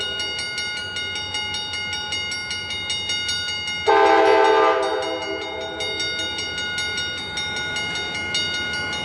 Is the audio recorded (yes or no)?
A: yes